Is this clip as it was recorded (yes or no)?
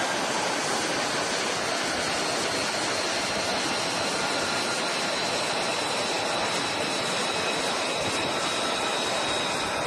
yes